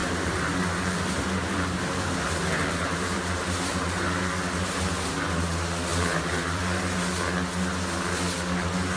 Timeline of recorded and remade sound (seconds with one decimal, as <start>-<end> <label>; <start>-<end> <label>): 0.0-4.2 remade; 4.2-5.9 recorded; 5.9-6.6 remade; 6.6-9.0 recorded